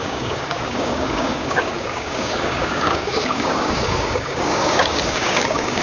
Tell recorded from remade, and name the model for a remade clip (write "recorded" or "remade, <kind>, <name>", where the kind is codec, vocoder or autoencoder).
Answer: remade, codec, DAC